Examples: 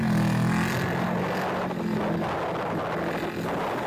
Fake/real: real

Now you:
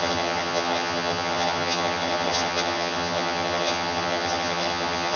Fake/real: fake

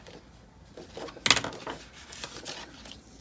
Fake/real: real